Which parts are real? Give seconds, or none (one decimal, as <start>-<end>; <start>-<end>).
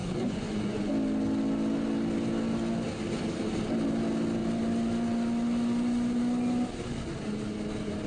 0.9-8.1